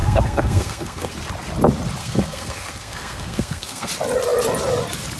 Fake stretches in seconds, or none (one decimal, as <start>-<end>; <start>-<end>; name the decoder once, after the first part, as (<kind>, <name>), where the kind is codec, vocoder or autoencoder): 0.0-1.1 (codec, SNAC); 2.0-3.9

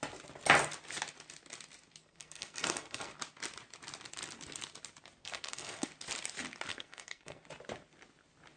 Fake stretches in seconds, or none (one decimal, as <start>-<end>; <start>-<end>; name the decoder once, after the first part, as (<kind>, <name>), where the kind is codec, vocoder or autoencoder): 2.0-3.1 (codec, SNAC); 5.2-5.9; 6.7-7.4

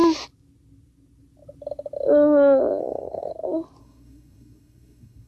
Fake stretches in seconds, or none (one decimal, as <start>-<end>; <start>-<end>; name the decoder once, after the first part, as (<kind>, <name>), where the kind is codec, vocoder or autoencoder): 2.8-3.3 (codec, SNAC); 3.8-5.3

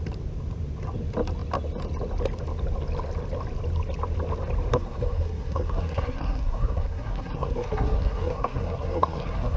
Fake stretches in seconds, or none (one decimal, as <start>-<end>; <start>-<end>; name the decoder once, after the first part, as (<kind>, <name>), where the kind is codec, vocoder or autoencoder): 4.7-9.6 (codec, SNAC)

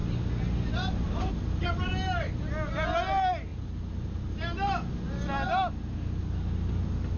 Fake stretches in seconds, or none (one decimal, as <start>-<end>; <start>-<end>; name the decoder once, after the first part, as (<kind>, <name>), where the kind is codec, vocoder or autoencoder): none